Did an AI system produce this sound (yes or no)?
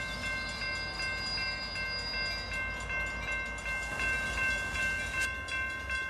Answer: no